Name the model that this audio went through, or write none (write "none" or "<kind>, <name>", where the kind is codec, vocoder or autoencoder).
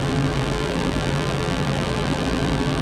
vocoder, BigVGAN v2